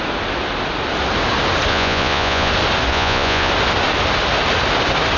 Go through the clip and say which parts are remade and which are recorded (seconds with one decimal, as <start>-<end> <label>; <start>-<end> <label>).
0.0-1.7 recorded; 1.7-2.5 remade; 2.5-2.9 recorded; 2.9-3.5 remade; 3.5-5.2 recorded